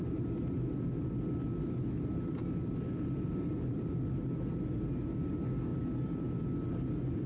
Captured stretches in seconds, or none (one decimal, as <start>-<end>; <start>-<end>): 0.0-7.3